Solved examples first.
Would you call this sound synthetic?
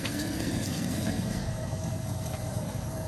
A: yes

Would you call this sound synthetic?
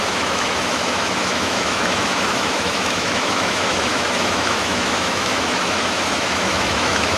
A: yes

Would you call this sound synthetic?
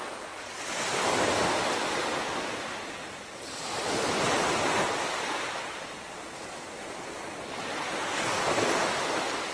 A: no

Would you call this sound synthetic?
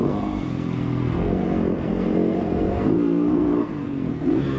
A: yes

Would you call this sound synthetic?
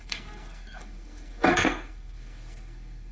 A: yes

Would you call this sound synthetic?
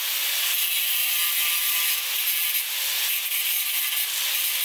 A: no